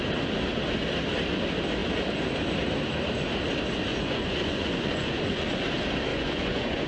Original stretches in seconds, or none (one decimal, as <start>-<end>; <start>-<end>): 0.0-3.9; 5.5-6.1